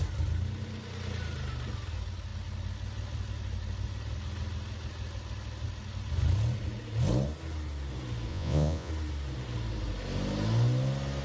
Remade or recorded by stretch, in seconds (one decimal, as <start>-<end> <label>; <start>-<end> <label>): 0.0-8.3 recorded; 8.3-8.9 remade; 8.9-11.2 recorded